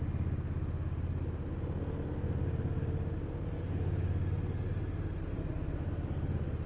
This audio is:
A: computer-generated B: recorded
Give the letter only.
B